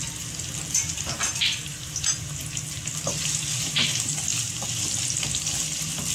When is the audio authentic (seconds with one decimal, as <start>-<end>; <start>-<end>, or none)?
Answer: 0.0-6.1